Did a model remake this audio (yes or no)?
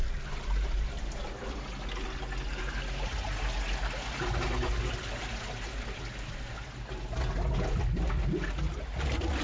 no